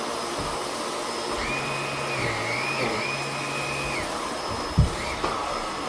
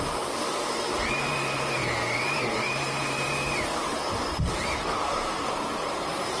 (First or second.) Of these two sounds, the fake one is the second